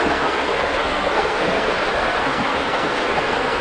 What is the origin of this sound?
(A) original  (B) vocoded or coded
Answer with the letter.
B